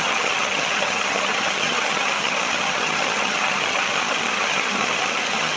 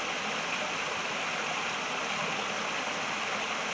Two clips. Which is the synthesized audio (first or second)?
first